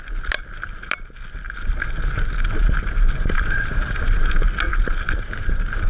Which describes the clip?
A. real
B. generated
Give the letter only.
A